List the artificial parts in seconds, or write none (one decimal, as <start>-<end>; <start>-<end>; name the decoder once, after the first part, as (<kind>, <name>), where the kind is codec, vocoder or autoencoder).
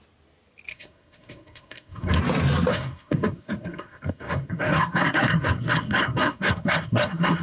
0.7-2.2 (codec, SNAC); 2.7-7.4